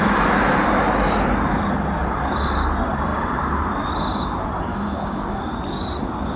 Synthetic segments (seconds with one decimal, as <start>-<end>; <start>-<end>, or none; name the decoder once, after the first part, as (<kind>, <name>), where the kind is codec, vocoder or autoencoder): 4.7-5.4 (codec, DAC)

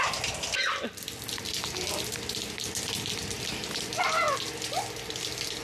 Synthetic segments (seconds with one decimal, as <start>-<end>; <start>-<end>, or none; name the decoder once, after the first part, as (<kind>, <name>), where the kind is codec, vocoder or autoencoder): none

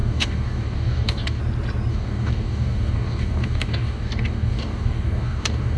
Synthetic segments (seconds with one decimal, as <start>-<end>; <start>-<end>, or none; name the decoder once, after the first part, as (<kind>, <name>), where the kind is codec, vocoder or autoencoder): 0.0-1.4 (codec, DAC); 1.9-5.8

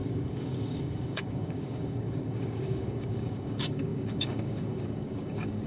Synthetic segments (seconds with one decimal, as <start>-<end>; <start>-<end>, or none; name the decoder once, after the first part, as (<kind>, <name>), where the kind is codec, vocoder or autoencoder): 0.0-5.7 (codec, DAC)